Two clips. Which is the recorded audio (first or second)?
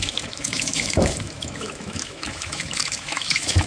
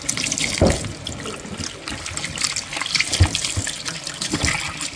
second